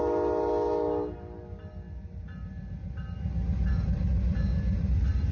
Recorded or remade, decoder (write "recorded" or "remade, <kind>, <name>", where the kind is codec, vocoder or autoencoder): recorded